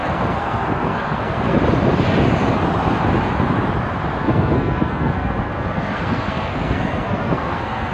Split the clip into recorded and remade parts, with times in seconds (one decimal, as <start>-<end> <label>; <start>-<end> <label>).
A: 0.0-1.6 remade; 1.6-4.2 recorded; 4.2-7.9 remade